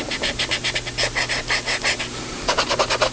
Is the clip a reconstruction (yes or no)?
no